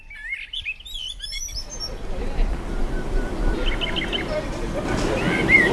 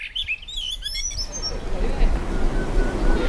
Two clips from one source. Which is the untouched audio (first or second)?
second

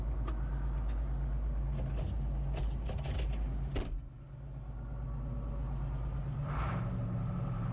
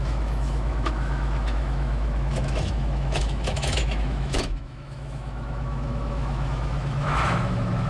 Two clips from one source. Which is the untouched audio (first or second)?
first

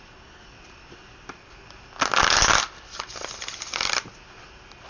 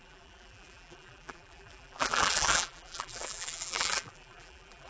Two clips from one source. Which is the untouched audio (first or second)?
first